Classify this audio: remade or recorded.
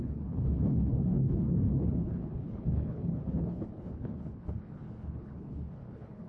remade